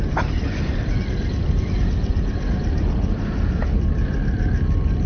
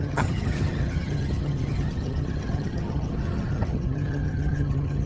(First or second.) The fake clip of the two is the second